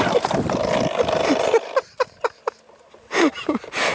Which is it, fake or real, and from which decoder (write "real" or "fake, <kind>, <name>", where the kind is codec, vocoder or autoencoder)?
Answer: fake, vocoder, BigVGAN v2